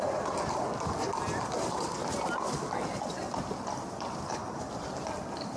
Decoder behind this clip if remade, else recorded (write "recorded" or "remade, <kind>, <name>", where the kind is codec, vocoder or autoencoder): recorded